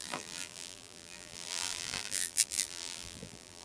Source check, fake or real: fake